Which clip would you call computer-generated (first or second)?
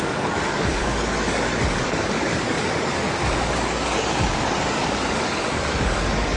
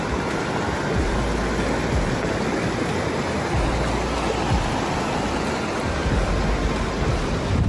first